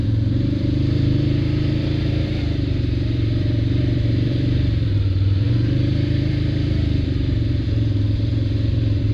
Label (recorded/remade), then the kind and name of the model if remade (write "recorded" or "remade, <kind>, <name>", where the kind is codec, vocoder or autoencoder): remade, vocoder, BigVGAN v2